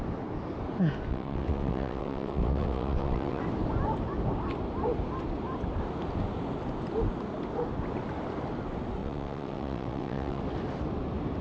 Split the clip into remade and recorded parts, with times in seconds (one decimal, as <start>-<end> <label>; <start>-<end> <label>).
0.0-1.1 recorded; 1.1-3.4 remade; 3.4-9.0 recorded; 9.0-10.4 remade; 10.4-11.4 recorded